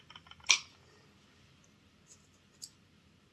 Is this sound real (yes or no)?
no